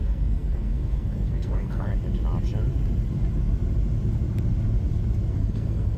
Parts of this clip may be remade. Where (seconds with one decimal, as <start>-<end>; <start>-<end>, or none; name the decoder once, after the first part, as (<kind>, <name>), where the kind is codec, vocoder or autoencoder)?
0.0-1.9 (codec, SNAC); 5.3-6.0